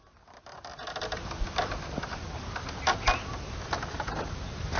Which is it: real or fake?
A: real